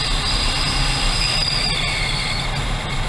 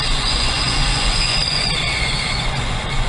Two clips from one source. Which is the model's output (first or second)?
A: second